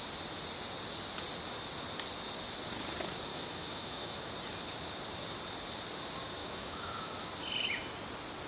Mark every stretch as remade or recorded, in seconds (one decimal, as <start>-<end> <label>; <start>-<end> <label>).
0.0-3.3 recorded; 3.3-4.3 remade; 4.3-6.4 recorded; 6.4-7.1 remade; 7.1-8.5 recorded